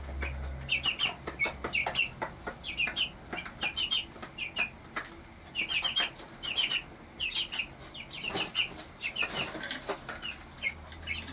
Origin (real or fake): real